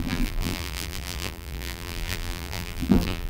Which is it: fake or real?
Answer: fake